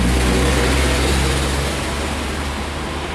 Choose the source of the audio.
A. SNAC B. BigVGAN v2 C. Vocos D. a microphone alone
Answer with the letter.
D